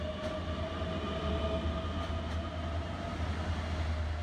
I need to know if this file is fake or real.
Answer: real